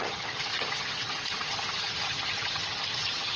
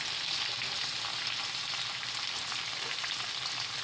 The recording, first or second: second